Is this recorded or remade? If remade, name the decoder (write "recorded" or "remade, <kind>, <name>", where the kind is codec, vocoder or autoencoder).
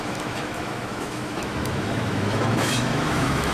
remade, autoencoder, DAC-VAE